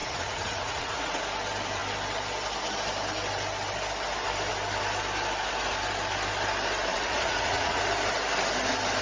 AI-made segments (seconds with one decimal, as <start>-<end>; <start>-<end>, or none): 0.0-1.2; 6.9-7.8